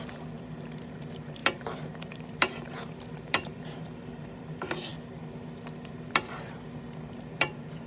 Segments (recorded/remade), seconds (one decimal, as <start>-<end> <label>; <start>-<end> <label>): 0.0-4.9 remade; 4.9-5.9 recorded; 5.9-7.9 remade